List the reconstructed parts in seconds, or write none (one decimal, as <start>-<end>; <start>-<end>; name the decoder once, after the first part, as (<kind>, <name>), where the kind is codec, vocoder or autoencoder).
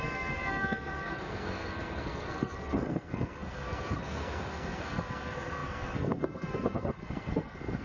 0.0-7.8 (codec, SNAC)